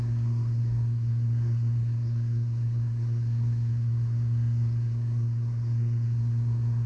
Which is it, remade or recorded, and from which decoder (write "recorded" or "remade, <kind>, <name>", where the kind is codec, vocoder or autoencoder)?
remade, codec, SNAC